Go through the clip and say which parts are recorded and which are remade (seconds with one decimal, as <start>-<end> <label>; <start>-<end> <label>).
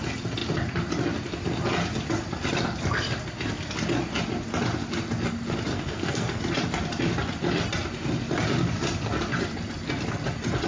0.0-5.7 recorded; 5.7-6.4 remade; 6.4-10.7 recorded